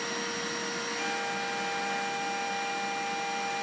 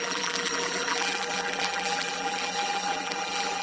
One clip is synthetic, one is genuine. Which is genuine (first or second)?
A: first